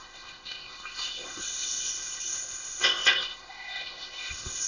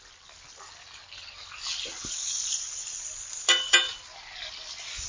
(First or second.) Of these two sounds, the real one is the second